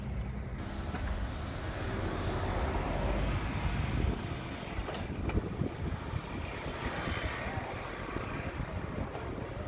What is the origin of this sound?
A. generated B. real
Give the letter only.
B